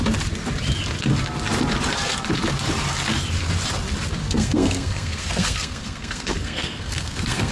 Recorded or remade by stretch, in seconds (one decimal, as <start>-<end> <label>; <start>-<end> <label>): 0.0-4.2 recorded; 4.2-7.5 remade